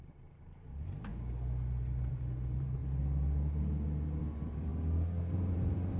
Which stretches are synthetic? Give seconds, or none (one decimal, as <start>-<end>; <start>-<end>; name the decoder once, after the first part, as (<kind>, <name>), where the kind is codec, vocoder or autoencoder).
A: 0.0-1.1 (vocoder, BigVGAN v2); 2.1-2.8; 4.2-4.7; 5.3-6.0